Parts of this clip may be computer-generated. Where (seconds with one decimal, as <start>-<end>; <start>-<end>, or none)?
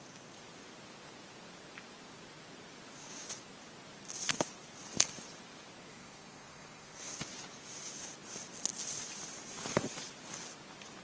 5.9-7.2